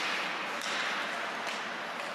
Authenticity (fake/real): real